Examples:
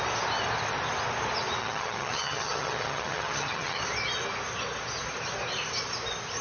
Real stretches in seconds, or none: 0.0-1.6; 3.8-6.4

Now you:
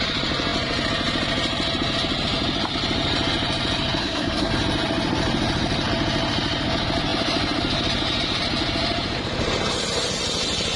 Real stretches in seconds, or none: 0.0-4.0; 4.5-10.8